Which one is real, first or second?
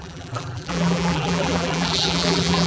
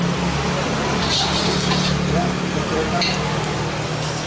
second